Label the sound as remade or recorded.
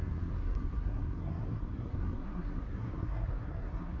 remade